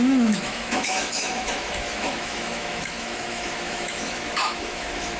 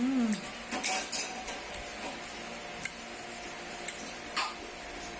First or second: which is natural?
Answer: second